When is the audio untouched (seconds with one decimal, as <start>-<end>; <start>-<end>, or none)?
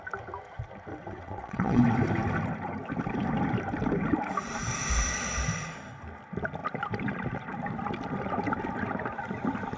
0.0-0.9; 1.8-9.8